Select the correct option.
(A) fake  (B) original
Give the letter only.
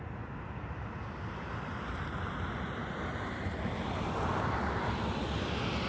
B